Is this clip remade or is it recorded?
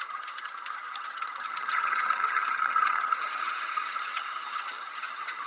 remade